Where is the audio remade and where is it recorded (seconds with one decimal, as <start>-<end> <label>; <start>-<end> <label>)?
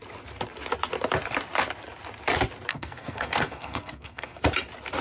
0.0-2.7 recorded; 2.7-4.4 remade; 4.4-5.0 recorded